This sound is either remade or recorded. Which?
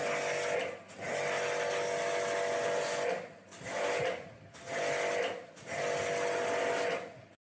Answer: recorded